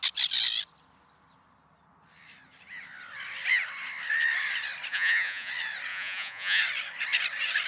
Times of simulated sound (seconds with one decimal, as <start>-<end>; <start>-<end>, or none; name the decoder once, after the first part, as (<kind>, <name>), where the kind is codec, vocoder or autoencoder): 4.9-5.5 (vocoder, Vocos); 5.9-6.6